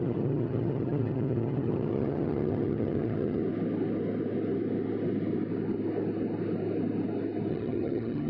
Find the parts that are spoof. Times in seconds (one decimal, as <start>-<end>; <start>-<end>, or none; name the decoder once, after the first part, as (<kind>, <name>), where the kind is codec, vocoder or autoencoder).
0.0-3.4 (vocoder, HiFi-GAN); 7.5-8.3